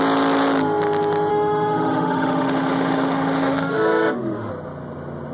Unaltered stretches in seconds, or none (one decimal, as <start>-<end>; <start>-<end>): 0.0-1.3; 4.5-5.3